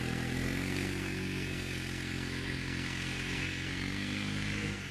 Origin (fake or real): fake